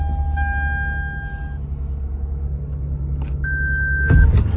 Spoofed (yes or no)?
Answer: no